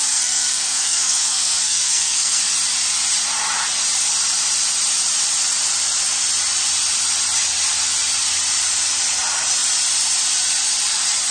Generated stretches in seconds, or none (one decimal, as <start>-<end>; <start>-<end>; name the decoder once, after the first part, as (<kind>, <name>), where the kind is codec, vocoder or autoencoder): 0.0-2.4 (codec, SNAC)